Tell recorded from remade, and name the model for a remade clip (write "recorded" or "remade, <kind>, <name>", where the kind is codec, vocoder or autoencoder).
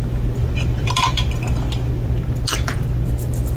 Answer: recorded